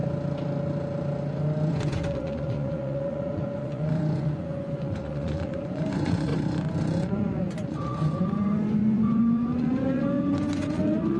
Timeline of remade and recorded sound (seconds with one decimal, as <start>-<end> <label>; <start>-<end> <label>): 0.0-1.7 recorded; 1.7-6.3 remade; 6.3-7.1 recorded; 7.1-11.2 remade